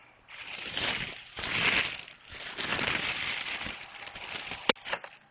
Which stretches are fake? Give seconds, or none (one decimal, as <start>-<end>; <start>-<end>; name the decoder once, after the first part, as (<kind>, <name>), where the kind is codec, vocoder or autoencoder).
0.0-1.5 (vocoder, BigVGAN v2); 2.7-4.5